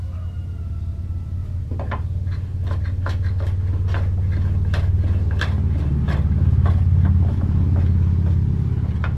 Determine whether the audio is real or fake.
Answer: real